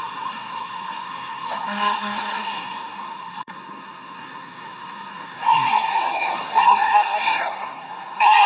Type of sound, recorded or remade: remade